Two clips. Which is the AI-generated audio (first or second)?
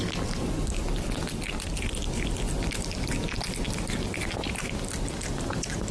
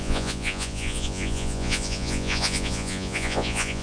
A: second